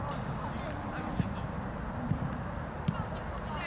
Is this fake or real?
real